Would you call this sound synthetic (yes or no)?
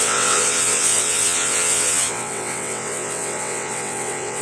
yes